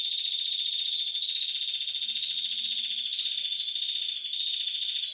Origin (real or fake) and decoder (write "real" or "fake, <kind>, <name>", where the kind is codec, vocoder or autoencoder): real